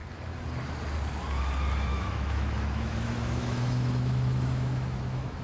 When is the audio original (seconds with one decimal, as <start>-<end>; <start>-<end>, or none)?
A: 0.0-1.9